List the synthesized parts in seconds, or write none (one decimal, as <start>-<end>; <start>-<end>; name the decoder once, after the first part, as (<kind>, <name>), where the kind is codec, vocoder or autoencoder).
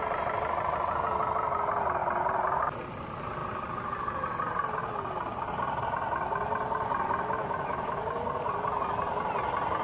7.4-8.0 (autoencoder, DAC-VAE)